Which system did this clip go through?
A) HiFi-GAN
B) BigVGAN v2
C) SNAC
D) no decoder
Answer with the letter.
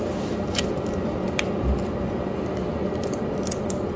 D